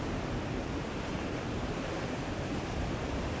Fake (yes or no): yes